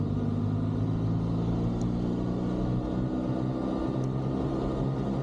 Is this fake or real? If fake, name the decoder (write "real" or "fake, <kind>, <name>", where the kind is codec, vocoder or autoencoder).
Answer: real